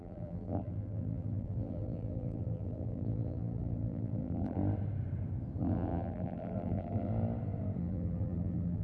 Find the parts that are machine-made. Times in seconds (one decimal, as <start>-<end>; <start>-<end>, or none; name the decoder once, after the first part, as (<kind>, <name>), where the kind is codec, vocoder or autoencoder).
0.0-4.6 (vocoder, BigVGAN v2); 5.6-7.1; 7.8-8.8